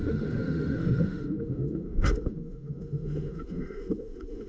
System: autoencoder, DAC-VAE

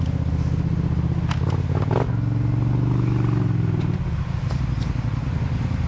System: none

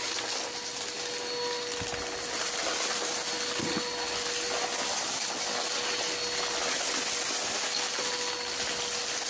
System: none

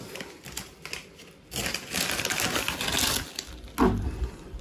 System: none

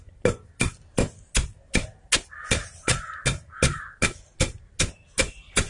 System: none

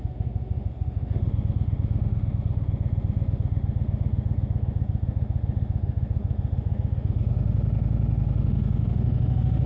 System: autoencoder, DAC-VAE